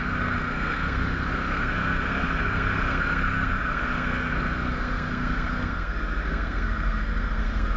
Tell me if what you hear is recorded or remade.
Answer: remade